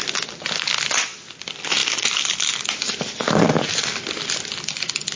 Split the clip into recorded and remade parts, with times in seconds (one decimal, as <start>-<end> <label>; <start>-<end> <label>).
0.0-5.2 recorded